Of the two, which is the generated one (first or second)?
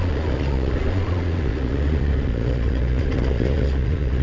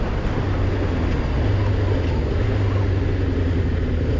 first